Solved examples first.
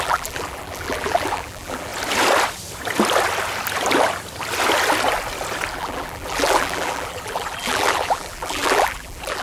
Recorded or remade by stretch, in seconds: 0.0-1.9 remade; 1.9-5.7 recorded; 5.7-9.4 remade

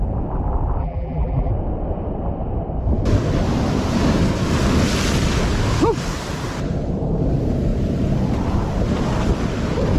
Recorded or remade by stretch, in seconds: 0.0-0.8 recorded; 0.8-1.5 remade; 1.5-10.0 recorded

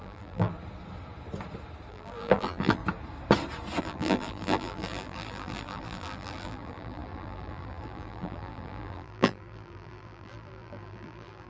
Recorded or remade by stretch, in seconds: 0.0-0.5 remade; 0.5-1.9 recorded; 1.9-2.8 remade; 2.8-3.8 recorded; 3.8-11.5 remade

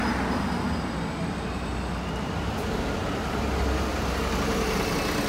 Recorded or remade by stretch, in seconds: 0.0-5.3 recorded

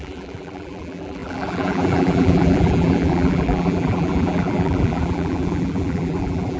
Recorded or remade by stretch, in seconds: 0.0-6.6 remade

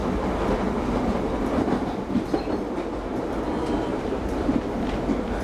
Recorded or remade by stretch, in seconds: 0.0-3.9 recorded; 3.9-4.7 remade; 4.7-5.4 recorded

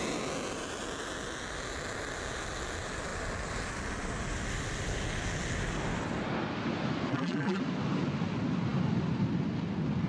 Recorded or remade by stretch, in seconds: 0.0-7.1 recorded; 7.1-7.6 remade; 7.6-10.1 recorded